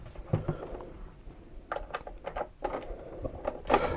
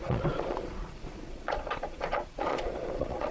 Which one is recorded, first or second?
first